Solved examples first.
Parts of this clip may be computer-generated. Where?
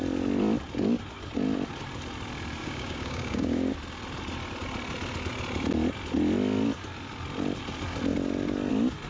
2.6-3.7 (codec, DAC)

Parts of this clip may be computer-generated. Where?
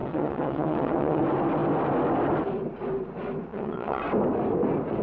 0.0-1.2 (vocoder, WaveNeXt); 3.5-4.0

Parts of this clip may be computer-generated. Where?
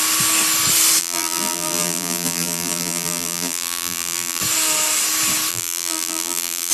1.0-4.4 (vocoder, BigVGAN v2); 5.5-6.7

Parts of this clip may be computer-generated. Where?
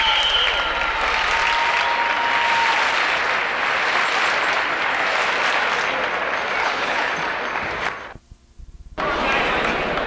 6.6-7.1 (codec, HILCodec)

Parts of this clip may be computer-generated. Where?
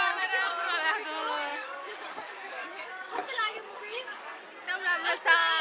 1.5-4.4 (codec, DAC)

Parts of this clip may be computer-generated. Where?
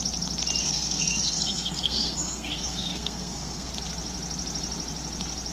0.6-3.7 (codec, SNAC)